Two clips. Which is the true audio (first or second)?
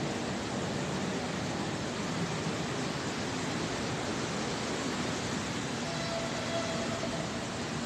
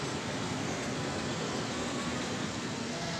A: first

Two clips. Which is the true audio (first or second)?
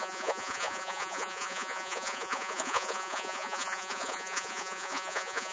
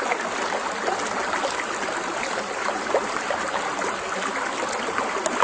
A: second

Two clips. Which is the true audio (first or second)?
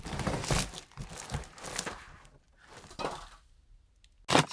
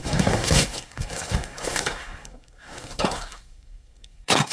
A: first